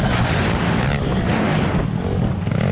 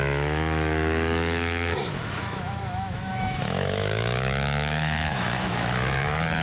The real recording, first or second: first